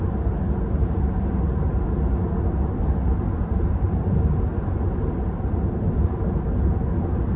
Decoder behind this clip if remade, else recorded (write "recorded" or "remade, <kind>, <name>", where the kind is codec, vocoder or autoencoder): recorded